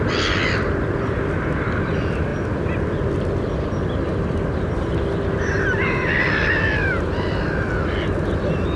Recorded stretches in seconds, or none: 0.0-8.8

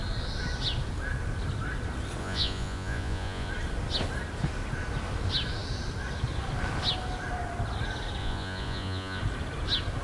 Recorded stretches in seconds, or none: 0.0-2.2; 3.5-8.2; 9.2-10.0

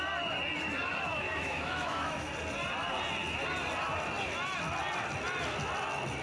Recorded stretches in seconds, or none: 0.0-1.1; 2.3-6.2

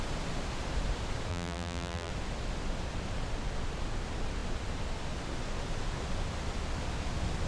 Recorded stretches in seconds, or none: 0.0-1.3; 2.1-7.5